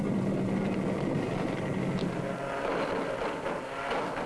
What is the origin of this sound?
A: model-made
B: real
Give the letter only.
B